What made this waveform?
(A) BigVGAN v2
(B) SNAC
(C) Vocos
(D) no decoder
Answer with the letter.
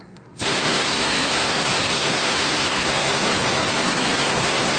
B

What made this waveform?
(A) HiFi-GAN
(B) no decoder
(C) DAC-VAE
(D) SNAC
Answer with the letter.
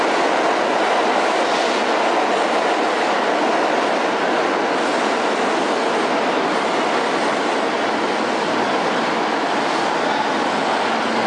B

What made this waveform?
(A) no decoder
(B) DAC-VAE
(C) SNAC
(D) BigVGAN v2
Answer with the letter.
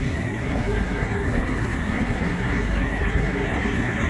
C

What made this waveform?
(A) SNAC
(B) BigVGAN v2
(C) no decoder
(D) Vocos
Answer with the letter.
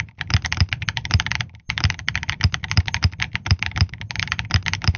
C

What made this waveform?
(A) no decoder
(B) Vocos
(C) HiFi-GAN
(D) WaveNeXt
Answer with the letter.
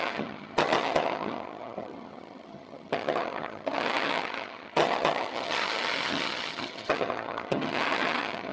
C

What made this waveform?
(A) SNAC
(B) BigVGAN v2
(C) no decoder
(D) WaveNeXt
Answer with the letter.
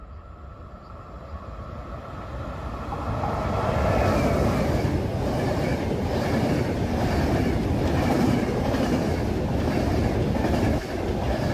C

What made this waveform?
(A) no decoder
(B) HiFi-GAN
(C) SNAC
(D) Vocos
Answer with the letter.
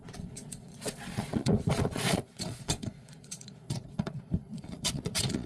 D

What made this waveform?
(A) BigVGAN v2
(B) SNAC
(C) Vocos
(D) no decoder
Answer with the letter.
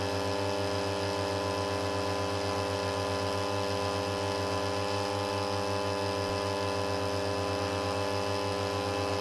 D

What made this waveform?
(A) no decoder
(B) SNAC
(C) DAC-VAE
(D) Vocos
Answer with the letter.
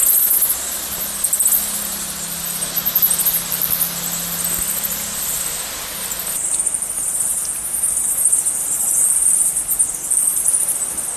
A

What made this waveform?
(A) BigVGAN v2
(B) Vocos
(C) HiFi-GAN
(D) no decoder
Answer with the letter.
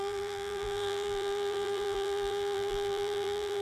A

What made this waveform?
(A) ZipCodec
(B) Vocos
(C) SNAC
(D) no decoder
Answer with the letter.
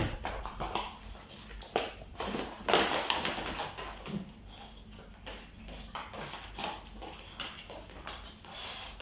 D